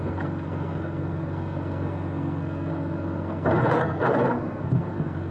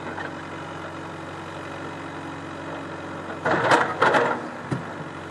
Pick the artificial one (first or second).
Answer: first